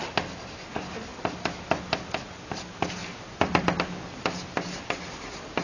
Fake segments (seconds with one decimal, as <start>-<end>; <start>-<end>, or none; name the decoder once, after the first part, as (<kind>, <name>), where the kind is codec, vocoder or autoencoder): none